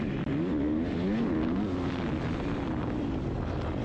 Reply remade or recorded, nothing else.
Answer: recorded